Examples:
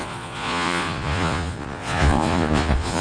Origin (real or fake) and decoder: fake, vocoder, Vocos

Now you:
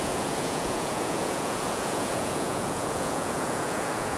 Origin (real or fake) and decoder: fake, vocoder, Vocos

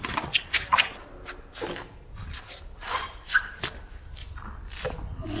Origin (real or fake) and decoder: real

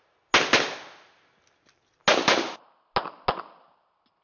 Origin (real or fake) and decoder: real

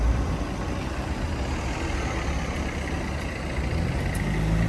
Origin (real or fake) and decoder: real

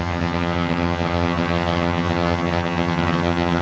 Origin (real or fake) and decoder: fake, vocoder, HiFi-GAN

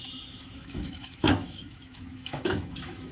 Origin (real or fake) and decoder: fake, autoencoder, DAC-VAE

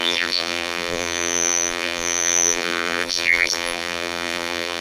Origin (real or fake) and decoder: fake, vocoder, BigVGAN v2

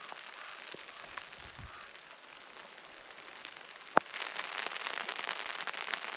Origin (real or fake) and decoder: real